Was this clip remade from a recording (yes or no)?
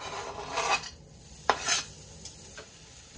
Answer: no